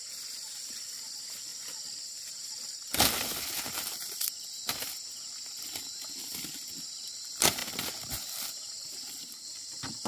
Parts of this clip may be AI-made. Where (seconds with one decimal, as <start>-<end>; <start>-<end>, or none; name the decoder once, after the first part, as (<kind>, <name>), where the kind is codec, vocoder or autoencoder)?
none

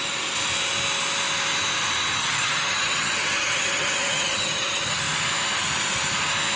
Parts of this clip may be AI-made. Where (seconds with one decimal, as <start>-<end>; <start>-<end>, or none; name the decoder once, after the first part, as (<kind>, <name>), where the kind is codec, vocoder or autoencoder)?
2.2-5.0 (vocoder, HiFi-GAN)

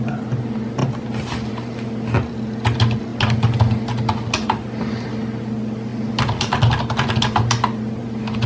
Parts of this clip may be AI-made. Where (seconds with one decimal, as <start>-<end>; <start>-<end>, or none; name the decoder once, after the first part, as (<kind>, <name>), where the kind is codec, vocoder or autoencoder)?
none